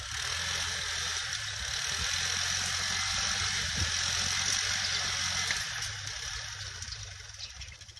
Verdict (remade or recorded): recorded